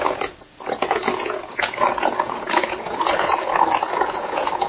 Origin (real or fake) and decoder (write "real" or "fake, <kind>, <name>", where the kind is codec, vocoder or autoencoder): fake, vocoder, Vocos